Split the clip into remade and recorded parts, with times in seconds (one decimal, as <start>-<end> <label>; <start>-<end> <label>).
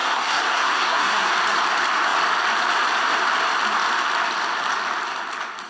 0.0-1.3 remade; 1.3-5.7 recorded